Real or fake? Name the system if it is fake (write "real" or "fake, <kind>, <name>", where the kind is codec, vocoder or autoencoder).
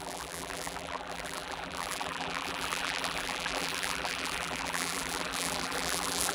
fake, vocoder, BigVGAN v2